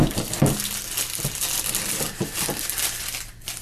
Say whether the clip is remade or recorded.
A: recorded